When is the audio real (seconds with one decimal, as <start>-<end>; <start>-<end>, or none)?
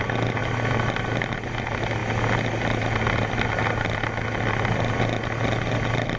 0.0-6.2